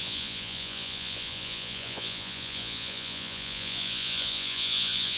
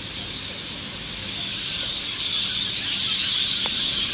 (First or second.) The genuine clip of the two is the second